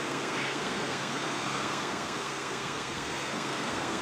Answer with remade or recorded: remade